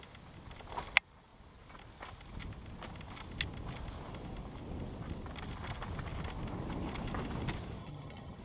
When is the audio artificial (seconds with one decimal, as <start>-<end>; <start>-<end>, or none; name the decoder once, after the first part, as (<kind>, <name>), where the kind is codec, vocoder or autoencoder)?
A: 7.8-8.4 (vocoder, HiFi-GAN)